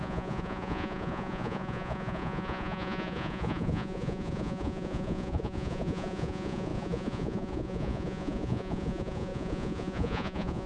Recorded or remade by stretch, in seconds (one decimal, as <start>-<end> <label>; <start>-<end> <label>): 0.0-10.7 remade